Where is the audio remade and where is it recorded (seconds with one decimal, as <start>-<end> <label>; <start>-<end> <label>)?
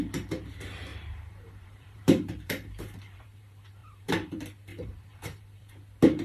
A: 0.0-0.9 recorded; 0.9-3.4 remade; 3.4-3.8 recorded; 3.8-4.3 remade; 4.3-4.7 recorded; 4.7-5.7 remade; 5.7-6.2 recorded